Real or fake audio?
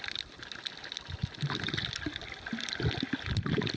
real